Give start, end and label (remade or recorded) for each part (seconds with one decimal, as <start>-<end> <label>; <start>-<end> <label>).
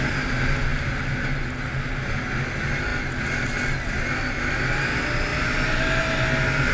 0.0-6.7 recorded